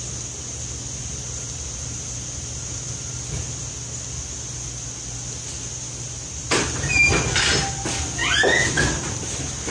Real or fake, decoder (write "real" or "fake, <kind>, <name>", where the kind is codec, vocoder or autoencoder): real